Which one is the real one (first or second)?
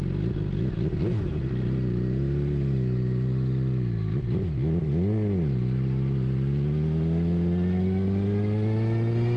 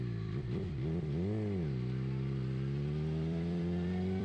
first